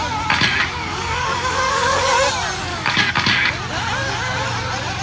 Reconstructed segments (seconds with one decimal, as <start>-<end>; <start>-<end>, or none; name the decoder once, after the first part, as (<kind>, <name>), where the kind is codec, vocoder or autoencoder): 0.8-2.1 (codec, DAC); 2.7-3.5